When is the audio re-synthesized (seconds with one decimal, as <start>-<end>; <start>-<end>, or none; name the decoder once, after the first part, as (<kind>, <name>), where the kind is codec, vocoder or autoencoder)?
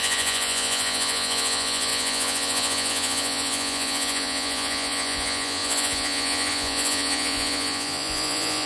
0.0-8.7 (vocoder, Vocos)